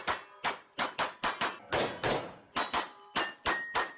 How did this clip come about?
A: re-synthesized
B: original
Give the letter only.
B